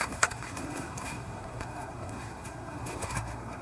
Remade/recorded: remade